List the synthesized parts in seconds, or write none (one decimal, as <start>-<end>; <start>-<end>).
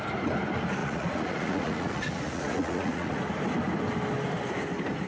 0.8-3.2